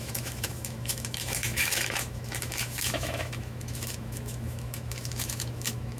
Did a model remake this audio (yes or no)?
yes